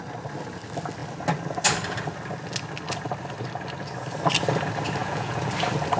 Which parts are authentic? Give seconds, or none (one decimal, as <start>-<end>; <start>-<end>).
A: 0.0-5.0; 5.5-6.0